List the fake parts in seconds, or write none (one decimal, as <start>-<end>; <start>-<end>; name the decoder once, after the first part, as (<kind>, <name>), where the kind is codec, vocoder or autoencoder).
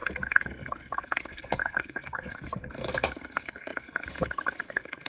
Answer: 0.0-5.1 (codec, SNAC)